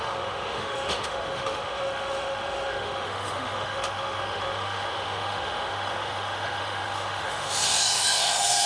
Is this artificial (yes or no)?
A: yes